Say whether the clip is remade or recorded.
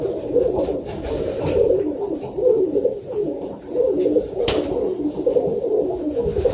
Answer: remade